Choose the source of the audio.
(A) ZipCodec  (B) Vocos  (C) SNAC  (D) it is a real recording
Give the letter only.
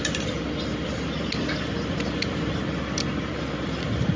D